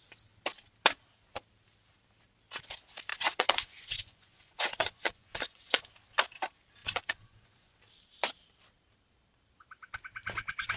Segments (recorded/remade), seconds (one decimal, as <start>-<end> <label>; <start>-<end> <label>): 0.0-3.1 recorded; 3.1-5.9 remade; 5.9-6.8 recorded; 6.8-7.8 remade; 7.8-10.8 recorded